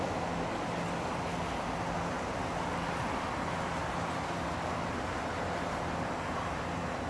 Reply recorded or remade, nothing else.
recorded